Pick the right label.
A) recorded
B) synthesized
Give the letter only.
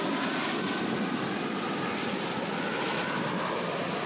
A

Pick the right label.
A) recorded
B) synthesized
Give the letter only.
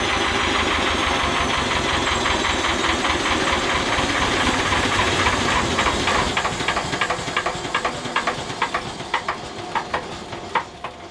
A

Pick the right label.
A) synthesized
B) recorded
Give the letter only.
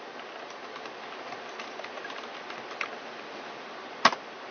B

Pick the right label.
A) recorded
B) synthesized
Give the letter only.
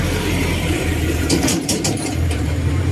B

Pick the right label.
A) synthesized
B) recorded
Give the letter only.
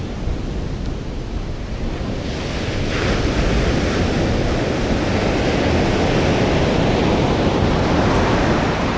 B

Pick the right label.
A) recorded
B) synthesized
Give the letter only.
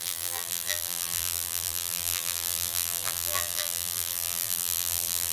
B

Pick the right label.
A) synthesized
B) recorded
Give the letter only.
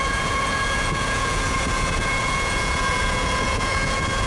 A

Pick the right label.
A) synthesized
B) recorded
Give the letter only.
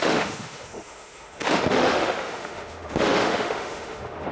A